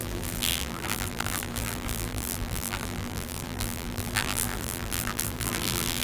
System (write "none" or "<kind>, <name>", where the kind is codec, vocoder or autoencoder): vocoder, BigVGAN v2